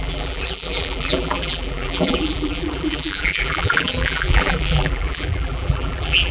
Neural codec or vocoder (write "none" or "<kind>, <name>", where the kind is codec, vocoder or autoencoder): vocoder, BigVGAN v2